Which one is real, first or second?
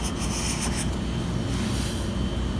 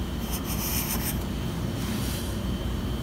first